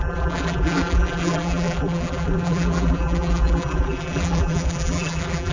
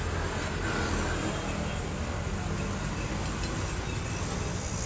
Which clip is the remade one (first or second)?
first